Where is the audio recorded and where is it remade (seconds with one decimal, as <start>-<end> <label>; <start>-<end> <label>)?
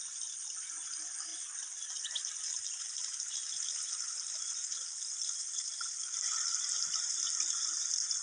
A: 0.0-8.2 recorded